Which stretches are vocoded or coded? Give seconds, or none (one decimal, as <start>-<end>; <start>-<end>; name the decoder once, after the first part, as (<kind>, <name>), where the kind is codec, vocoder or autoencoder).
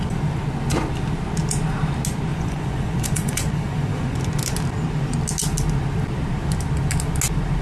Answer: 2.3-4.2 (vocoder, Vocos)